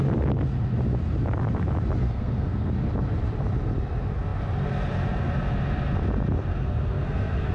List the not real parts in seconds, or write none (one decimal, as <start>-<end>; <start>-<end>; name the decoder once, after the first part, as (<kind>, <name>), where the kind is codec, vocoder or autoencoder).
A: 2.0-2.7 (codec, SNAC); 6.5-7.5